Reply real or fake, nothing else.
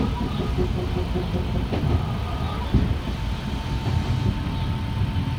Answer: real